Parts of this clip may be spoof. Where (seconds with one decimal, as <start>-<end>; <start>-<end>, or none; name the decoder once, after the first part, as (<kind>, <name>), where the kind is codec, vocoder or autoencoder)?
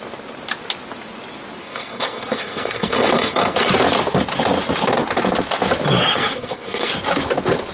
1.6-3.7 (codec, SNAC); 6.0-6.9